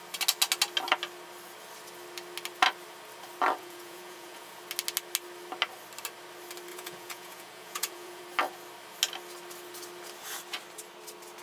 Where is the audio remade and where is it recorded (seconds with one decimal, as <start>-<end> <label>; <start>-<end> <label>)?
0.0-3.6 recorded; 3.6-4.5 remade; 4.5-6.7 recorded; 6.7-8.2 remade; 8.2-11.4 recorded